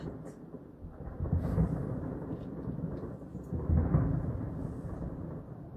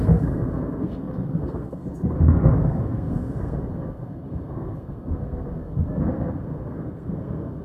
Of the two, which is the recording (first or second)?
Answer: first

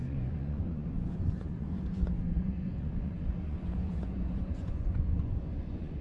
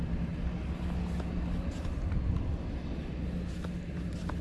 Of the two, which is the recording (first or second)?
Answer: second